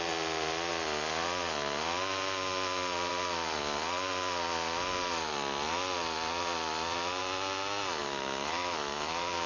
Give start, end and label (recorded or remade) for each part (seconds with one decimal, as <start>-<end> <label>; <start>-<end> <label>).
0.0-8.0 recorded; 8.0-9.5 remade